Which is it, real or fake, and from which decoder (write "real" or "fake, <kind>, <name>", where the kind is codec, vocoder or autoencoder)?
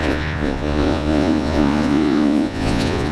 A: fake, vocoder, Vocos